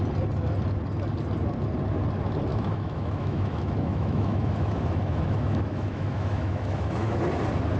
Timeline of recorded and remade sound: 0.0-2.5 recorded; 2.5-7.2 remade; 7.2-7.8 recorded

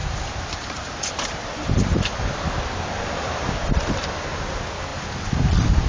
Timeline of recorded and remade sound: 0.0-3.5 remade; 3.5-5.9 recorded

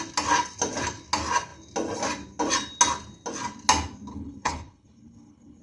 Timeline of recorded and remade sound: 0.0-4.1 recorded; 4.1-5.6 remade

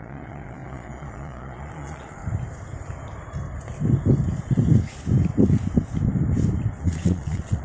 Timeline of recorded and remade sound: 0.0-2.2 remade; 2.2-6.8 recorded; 6.8-7.6 remade

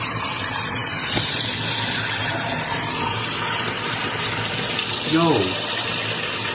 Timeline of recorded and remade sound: 0.0-6.5 recorded

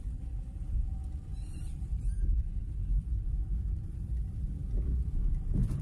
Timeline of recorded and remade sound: 0.0-1.3 recorded; 1.3-4.5 remade; 4.5-5.8 recorded